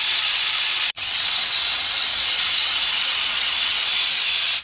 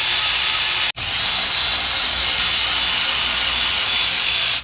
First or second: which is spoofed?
first